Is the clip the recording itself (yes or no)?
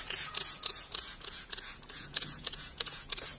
no